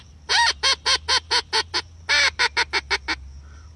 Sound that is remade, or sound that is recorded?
recorded